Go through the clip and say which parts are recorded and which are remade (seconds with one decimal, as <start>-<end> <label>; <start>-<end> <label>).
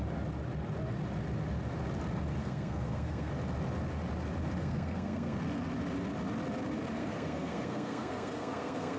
0.0-2.4 recorded; 2.4-3.3 remade; 3.3-4.6 recorded; 4.6-5.4 remade; 5.4-7.0 recorded; 7.0-9.0 remade